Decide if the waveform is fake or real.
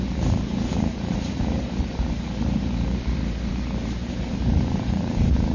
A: fake